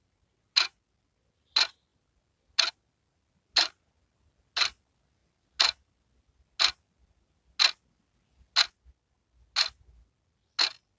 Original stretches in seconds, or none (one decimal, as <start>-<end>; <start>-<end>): 0.0-11.0